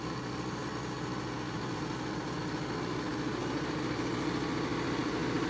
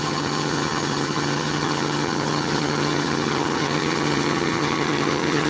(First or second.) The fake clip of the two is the second